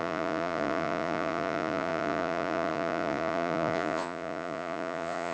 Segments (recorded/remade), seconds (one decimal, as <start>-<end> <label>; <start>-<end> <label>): 0.0-5.3 remade